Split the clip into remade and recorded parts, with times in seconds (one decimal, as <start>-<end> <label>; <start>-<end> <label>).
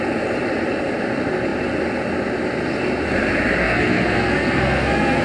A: 0.0-3.6 recorded; 3.6-5.2 remade